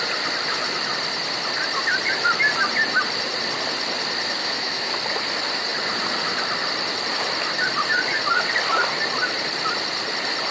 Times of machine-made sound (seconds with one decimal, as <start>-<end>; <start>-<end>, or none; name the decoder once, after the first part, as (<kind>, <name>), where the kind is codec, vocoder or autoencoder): 4.4-4.9 (autoencoder, DAC-VAE)